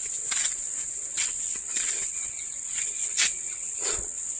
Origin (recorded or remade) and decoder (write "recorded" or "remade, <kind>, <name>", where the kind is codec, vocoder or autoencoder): remade, vocoder, WaveNeXt